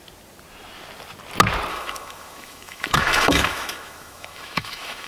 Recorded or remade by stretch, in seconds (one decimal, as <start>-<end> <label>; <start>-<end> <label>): 0.0-1.7 recorded; 1.7-5.1 remade